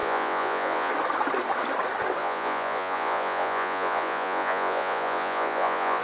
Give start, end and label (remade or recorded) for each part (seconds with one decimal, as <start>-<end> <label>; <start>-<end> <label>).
0.0-0.9 remade; 0.9-2.2 recorded; 2.2-6.0 remade